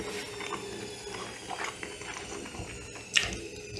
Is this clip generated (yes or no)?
no